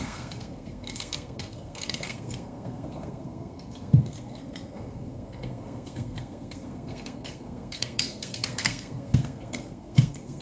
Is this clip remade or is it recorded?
remade